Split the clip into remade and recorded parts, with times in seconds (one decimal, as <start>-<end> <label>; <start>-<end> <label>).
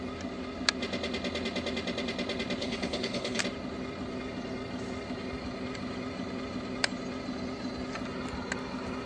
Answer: 0.0-2.6 recorded; 2.6-3.4 remade; 3.4-9.1 recorded